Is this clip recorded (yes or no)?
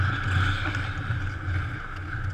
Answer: yes